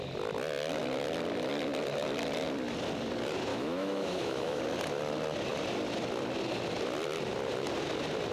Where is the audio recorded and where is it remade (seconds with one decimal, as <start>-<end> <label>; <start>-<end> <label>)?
0.0-3.5 recorded; 3.5-4.6 remade; 4.6-8.3 recorded